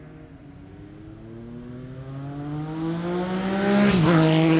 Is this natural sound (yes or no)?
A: yes